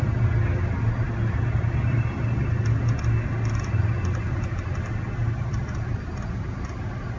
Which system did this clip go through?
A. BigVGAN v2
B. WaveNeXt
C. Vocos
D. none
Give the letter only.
D